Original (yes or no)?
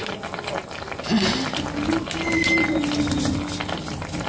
yes